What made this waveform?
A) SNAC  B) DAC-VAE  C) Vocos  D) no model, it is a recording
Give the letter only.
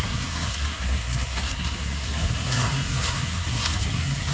A